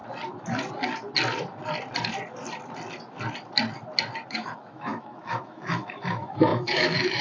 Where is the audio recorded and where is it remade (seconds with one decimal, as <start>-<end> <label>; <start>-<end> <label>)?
0.0-4.3 recorded; 4.3-7.2 remade